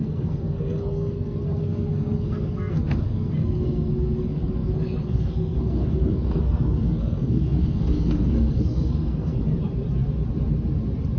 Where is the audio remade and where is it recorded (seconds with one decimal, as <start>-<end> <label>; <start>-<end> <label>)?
0.0-9.5 remade; 9.5-11.2 recorded